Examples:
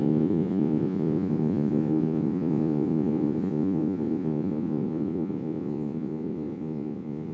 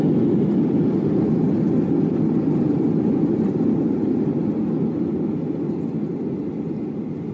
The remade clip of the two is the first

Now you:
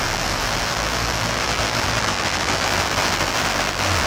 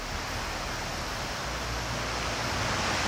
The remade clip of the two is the first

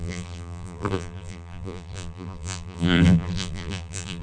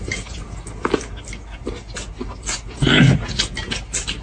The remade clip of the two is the first